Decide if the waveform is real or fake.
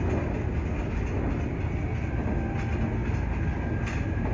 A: real